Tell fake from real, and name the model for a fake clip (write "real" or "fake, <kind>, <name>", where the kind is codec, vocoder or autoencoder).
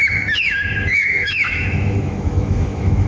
fake, autoencoder, DAC-VAE